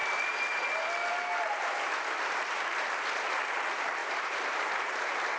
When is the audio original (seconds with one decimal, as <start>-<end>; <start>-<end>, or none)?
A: 0.0-4.0; 5.0-5.4